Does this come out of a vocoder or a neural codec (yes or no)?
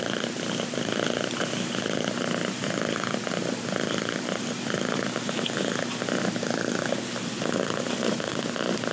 no